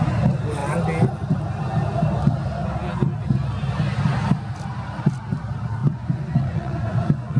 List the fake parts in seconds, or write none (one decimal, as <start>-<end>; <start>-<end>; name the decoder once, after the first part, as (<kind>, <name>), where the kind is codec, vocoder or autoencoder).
5.8-7.4 (vocoder, Vocos)